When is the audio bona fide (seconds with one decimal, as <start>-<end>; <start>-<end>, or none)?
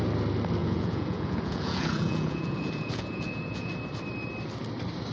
0.0-0.6; 3.7-5.1